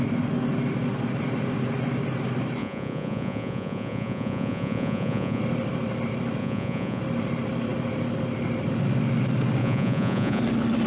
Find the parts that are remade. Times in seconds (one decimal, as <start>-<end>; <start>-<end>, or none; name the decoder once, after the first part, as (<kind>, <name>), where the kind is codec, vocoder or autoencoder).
2.6-5.4 (vocoder, Vocos); 6.4-7.0; 9.6-10.4